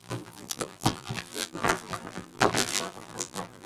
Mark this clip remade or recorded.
remade